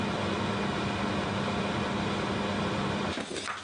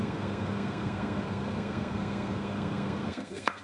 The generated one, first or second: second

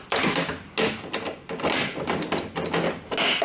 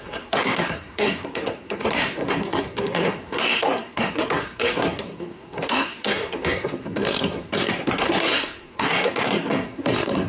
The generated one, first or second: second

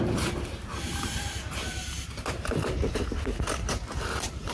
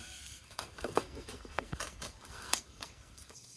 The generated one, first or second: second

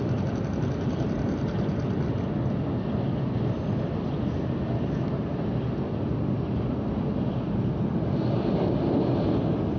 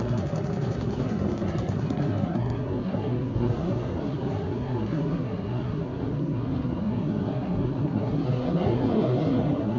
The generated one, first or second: second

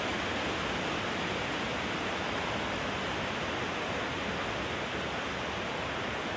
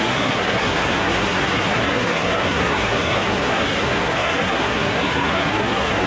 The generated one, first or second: second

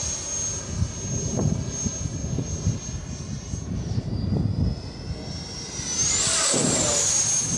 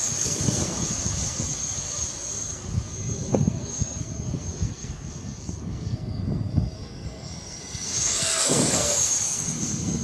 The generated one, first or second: second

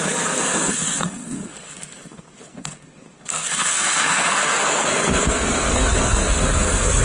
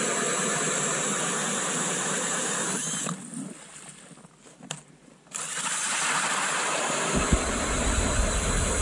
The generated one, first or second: first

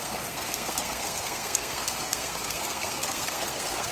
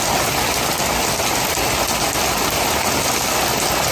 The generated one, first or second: first